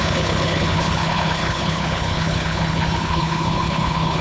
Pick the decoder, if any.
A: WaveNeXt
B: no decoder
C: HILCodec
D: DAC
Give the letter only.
C